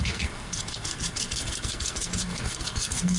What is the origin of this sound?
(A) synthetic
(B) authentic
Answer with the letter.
A